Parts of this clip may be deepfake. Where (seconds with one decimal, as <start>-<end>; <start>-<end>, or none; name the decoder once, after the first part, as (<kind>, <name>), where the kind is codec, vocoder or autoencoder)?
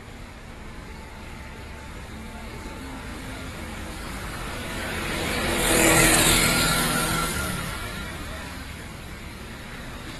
0.0-10.2 (codec, DAC)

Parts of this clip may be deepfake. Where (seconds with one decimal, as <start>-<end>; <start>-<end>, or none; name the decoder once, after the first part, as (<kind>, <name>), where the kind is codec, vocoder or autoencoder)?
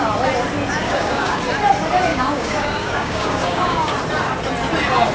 0.8-1.4 (codec, DAC); 2.1-3.9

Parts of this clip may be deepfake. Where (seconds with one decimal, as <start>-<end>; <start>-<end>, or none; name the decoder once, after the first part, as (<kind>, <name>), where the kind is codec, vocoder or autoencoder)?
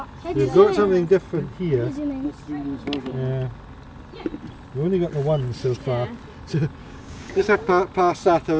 6.8-7.7 (codec, DAC)